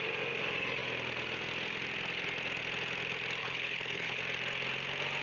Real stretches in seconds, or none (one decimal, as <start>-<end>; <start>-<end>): 0.0-3.4; 4.2-5.2